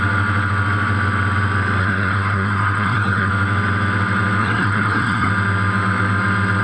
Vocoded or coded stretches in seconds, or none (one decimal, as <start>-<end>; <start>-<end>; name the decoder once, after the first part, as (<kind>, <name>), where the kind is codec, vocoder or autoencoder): 1.8-3.3 (codec, SNAC); 4.4-5.3